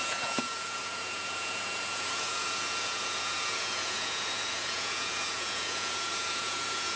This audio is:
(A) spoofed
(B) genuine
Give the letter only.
A